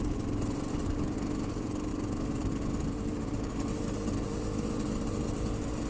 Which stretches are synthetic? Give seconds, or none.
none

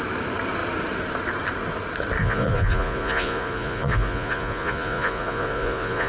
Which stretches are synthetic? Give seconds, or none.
2.2-6.1 (vocoder, Vocos)

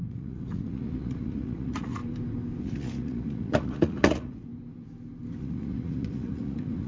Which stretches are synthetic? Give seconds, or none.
0.0-2.0 (vocoder, Vocos); 2.6-4.5; 5.4-6.9

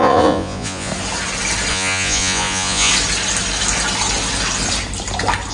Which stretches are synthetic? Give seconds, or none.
0.0-0.9 (vocoder, Vocos); 1.7-2.9